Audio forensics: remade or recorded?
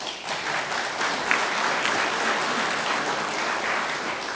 recorded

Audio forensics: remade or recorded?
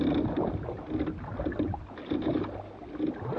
recorded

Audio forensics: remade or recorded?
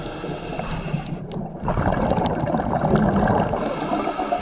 recorded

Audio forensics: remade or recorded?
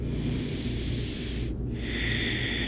recorded